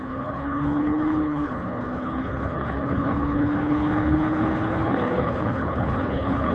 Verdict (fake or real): fake